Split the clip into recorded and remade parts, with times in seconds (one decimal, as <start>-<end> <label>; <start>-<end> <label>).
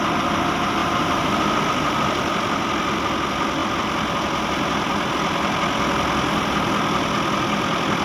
0.0-0.8 recorded; 0.8-1.6 remade; 1.6-8.0 recorded